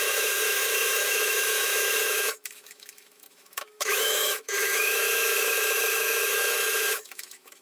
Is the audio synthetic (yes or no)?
yes